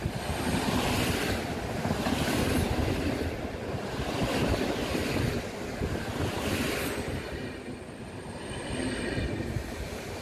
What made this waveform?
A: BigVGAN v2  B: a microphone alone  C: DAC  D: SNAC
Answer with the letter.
B